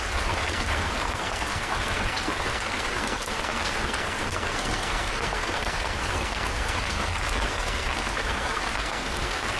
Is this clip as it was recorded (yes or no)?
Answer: no